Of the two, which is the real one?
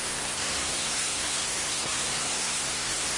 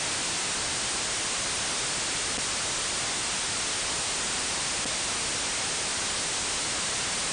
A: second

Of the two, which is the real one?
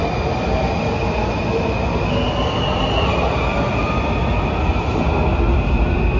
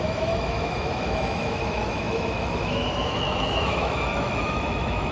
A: first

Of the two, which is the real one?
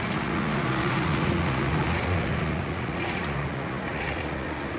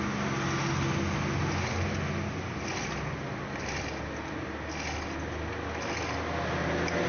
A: second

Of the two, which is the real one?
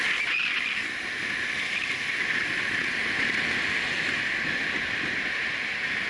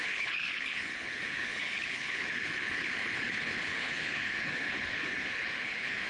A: first